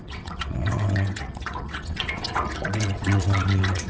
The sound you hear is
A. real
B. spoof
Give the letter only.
B